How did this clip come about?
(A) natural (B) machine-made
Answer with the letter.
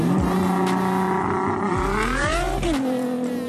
A